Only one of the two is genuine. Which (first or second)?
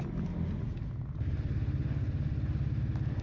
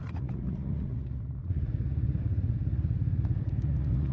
first